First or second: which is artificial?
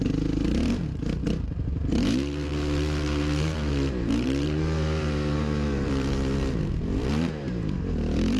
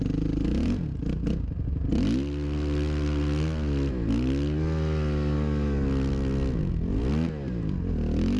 first